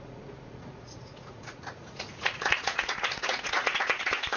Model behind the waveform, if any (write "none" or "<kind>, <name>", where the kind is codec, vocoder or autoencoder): vocoder, Vocos